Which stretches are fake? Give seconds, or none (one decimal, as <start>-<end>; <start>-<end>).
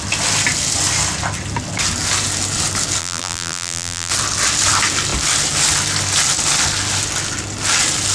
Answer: 3.0-4.1